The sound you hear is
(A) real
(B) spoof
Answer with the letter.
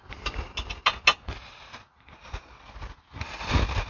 A